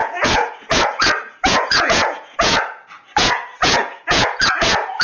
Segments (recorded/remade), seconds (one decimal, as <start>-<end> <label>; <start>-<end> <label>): 0.0-5.0 remade